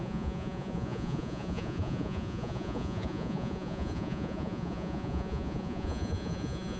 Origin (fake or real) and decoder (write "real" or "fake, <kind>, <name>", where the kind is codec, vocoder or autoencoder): fake, vocoder, Vocos